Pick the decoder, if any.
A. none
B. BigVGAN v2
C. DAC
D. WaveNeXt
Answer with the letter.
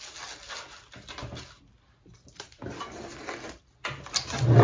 A